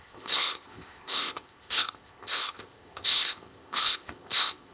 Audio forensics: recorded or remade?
remade